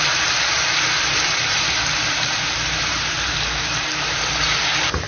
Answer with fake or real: fake